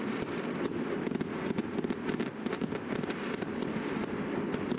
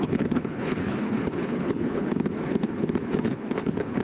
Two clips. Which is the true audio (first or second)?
first